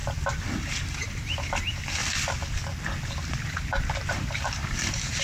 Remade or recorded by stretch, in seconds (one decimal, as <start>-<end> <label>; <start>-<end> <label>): 0.0-0.6 recorded; 0.6-2.0 remade; 2.0-4.1 recorded; 4.1-5.2 remade

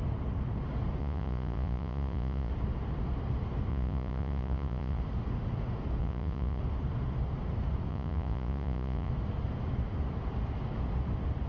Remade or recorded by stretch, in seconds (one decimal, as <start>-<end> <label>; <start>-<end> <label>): 0.0-1.0 recorded; 1.0-2.5 remade; 2.5-3.7 recorded; 3.7-5.0 remade; 5.0-6.0 recorded; 6.0-6.6 remade; 6.6-7.9 recorded; 7.9-9.1 remade; 9.1-11.5 recorded

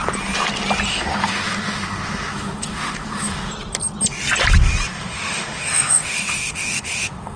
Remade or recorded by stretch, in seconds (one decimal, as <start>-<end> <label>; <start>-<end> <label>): 0.0-0.9 recorded; 0.9-3.5 remade; 3.5-4.9 recorded; 4.9-7.4 remade

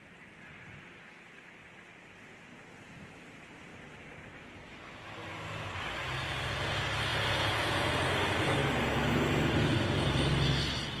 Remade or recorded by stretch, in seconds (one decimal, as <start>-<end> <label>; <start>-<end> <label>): 0.0-7.1 recorded; 7.1-7.9 remade; 7.9-11.0 recorded

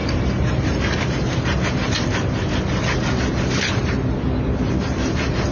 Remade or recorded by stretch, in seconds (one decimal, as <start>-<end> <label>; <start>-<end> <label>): 0.0-5.5 recorded